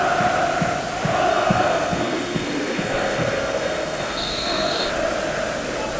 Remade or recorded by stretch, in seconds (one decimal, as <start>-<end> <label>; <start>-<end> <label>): 0.0-1.3 recorded; 1.3-4.9 remade; 4.9-6.0 recorded